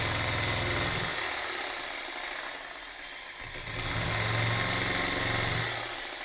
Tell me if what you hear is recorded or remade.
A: recorded